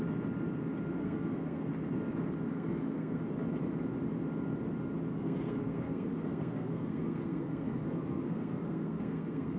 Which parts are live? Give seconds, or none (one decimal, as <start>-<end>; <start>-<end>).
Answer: 0.0-1.0; 1.7-2.5; 3.2-5.1

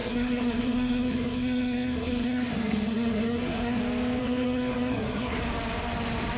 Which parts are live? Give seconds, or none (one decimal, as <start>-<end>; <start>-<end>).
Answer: 3.8-4.2; 5.4-6.4

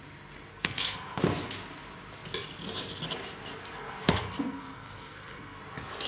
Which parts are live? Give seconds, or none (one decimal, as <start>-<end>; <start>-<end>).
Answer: 0.0-0.5; 1.2-3.5; 5.6-6.1

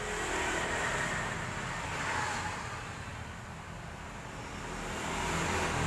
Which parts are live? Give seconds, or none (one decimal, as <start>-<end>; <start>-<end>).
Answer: 0.0-5.9

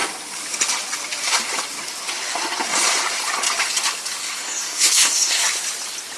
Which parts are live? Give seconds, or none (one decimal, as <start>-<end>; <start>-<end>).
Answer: 0.0-4.2; 5.4-6.2

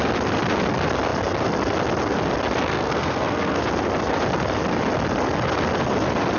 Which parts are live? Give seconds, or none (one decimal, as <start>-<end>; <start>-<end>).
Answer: 0.0-2.7; 3.6-6.4